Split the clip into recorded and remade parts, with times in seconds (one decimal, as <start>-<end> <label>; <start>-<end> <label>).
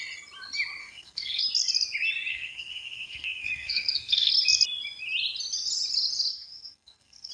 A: 0.0-0.8 recorded; 0.8-1.4 remade; 1.4-2.3 recorded; 2.3-4.3 remade; 4.3-6.3 recorded; 6.3-7.3 remade